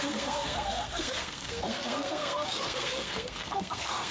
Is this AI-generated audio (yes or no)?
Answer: yes